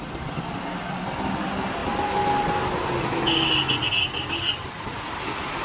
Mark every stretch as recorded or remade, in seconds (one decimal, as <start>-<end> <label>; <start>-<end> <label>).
0.0-5.6 recorded